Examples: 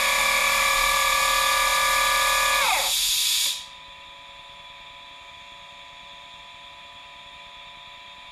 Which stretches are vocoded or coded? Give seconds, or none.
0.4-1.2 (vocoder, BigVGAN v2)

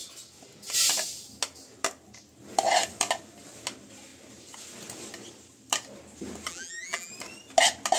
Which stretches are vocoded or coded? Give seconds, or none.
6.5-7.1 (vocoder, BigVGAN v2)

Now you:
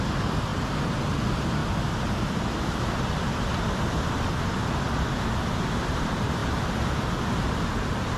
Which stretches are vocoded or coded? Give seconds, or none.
0.0-0.5 (vocoder, BigVGAN v2); 1.2-1.6; 5.8-6.4; 7.4-8.2

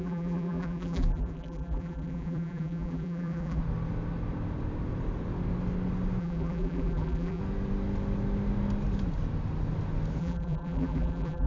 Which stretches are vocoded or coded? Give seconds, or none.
0.0-3.6 (vocoder, BigVGAN v2); 6.2-7.4; 10.2-11.5